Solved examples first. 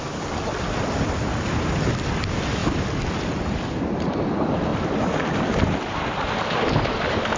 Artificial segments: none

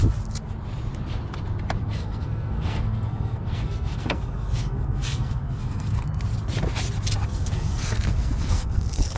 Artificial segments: 1.8-6.0 (codec, SNAC); 7.2-9.2

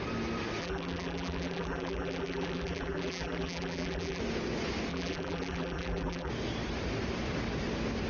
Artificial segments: 0.6-4.2 (vocoder, BigVGAN v2); 4.9-6.3

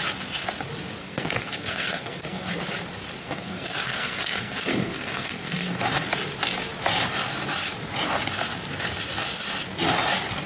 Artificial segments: 1.0-2.5 (codec, SNAC); 3.2-5.8

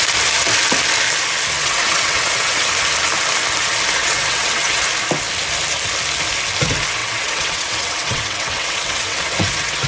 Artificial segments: 1.6-2.7 (vocoder, WaveNeXt); 4.0-4.8; 7.0-9.9

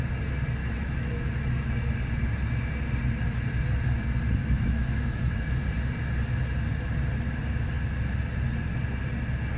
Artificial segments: 0.6-1.9 (autoencoder, DAC-VAE); 4.4-5.4

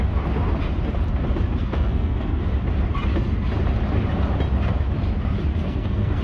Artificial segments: 1.6-2.4 (codec, SNAC); 5.5-6.2